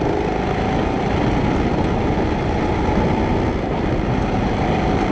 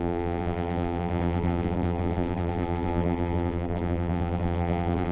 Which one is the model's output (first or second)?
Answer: second